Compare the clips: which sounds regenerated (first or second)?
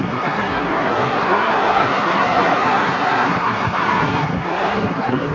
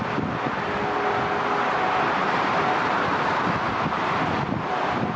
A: first